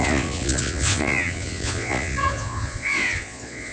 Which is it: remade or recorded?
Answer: remade